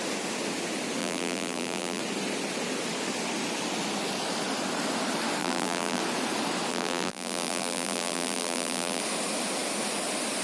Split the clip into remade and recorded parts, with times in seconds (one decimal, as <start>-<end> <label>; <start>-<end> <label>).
0.0-1.0 recorded; 1.0-2.0 remade; 2.0-5.4 recorded; 5.4-6.0 remade; 6.0-6.7 recorded; 6.7-9.0 remade; 9.0-10.4 recorded